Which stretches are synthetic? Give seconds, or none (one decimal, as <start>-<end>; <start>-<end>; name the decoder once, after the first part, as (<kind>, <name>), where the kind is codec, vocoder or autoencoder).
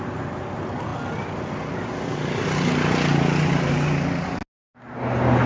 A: none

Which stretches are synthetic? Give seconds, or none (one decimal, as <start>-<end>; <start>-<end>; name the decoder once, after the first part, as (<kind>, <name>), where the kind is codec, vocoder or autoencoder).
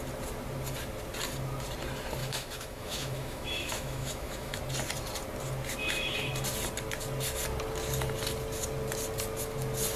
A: 2.2-4.6 (autoencoder, DAC-VAE); 5.8-6.3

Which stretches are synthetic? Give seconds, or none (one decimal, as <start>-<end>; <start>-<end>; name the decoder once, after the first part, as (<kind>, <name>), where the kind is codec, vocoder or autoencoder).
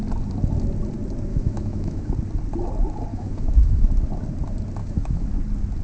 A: 1.3-2.1 (autoencoder, DAC-VAE); 3.1-3.9; 4.8-5.3